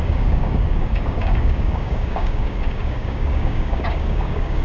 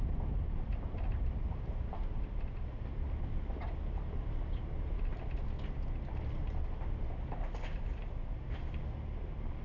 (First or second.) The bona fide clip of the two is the second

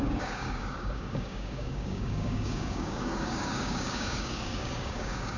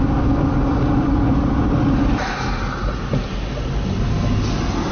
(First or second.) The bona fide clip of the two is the second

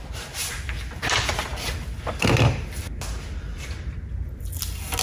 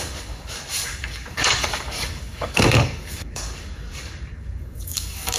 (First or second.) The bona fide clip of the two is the first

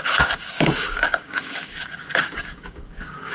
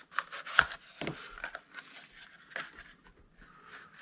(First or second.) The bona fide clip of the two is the second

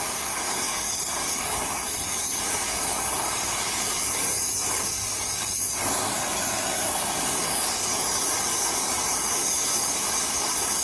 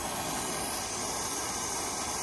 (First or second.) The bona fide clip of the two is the second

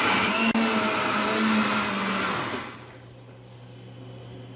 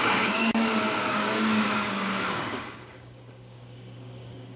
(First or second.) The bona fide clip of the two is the first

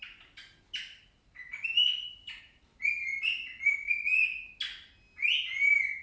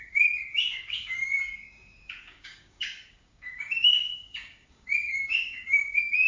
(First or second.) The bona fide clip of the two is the first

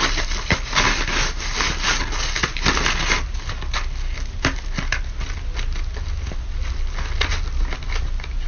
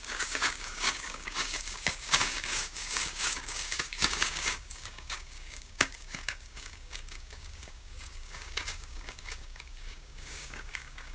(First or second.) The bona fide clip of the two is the first